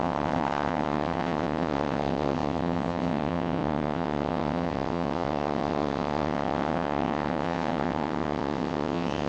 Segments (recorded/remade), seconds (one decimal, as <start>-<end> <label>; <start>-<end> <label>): 0.0-9.3 remade